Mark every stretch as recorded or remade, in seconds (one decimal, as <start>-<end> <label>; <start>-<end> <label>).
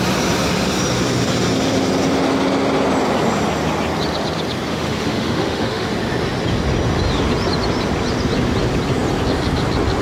0.0-4.7 recorded; 4.7-5.9 remade; 5.9-10.0 recorded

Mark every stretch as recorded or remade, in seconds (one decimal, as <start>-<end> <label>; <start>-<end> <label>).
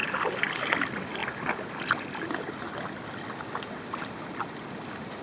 0.0-5.2 recorded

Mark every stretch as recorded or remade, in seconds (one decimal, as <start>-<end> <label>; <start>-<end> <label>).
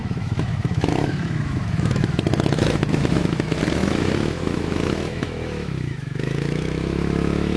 0.0-7.6 remade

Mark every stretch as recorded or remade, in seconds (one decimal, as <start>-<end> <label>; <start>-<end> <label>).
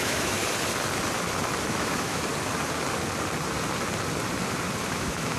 0.0-0.4 remade; 0.4-1.7 recorded; 1.7-2.3 remade; 2.3-4.9 recorded; 4.9-5.4 remade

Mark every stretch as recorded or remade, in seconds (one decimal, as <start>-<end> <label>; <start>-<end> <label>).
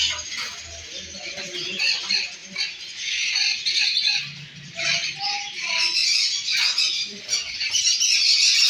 0.0-8.7 recorded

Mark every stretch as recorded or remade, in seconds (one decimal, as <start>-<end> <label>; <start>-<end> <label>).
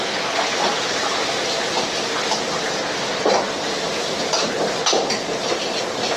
0.0-6.2 recorded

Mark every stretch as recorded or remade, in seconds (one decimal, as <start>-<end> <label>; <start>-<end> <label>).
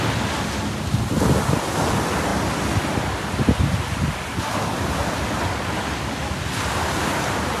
0.0-7.6 recorded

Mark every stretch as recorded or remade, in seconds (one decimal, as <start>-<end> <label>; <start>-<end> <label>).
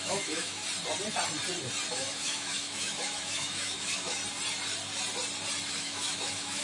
0.0-0.6 remade; 0.6-1.9 recorded; 1.9-4.2 remade; 4.2-5.6 recorded; 5.6-6.6 remade